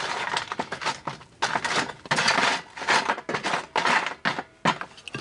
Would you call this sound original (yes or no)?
yes